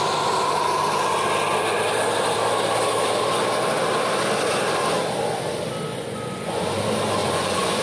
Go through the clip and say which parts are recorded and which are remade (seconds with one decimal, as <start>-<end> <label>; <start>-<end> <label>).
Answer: 0.0-5.9 recorded; 5.9-6.6 remade; 6.6-7.2 recorded; 7.2-7.8 remade